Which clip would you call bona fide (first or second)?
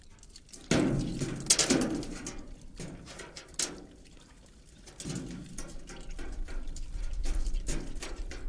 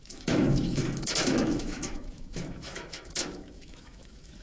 first